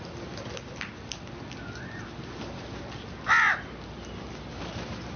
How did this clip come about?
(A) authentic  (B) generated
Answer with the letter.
A